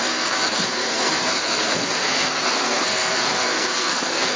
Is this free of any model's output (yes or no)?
no